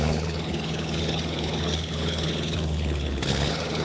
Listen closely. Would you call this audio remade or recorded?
remade